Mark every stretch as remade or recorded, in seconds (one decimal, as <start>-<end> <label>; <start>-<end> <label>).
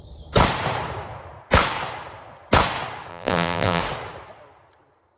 0.0-3.1 recorded; 3.1-3.8 remade; 3.8-5.2 recorded